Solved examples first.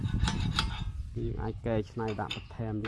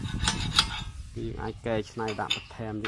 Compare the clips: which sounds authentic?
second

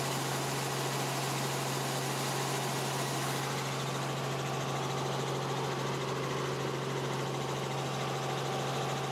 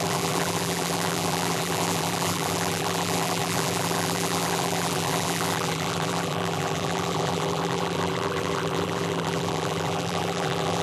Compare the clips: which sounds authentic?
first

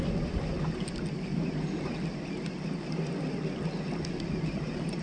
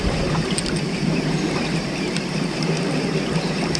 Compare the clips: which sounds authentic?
first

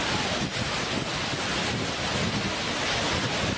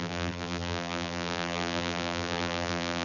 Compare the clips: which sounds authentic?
first